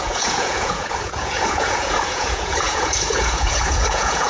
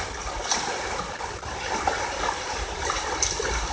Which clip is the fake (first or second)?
first